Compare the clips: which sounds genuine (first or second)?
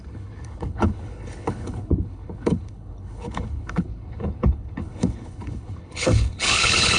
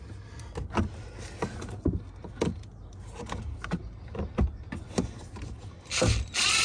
second